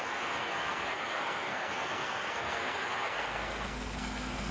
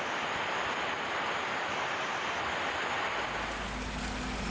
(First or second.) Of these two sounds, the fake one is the first